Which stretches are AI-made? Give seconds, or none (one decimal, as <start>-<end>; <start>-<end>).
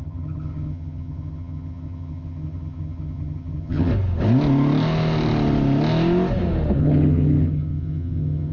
0.0-3.9; 6.8-8.5